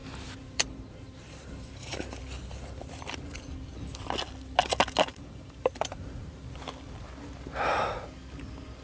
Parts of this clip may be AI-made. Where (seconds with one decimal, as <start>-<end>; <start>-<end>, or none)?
0.0-2.2; 5.1-6.4